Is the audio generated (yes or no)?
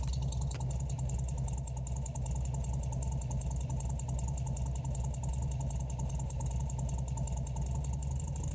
no